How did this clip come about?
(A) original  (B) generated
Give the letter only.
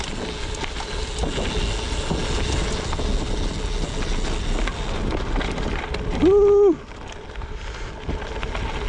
A